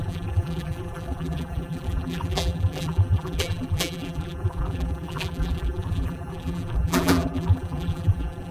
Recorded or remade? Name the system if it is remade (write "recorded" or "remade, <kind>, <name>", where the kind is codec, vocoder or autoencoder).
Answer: remade, vocoder, BigVGAN v2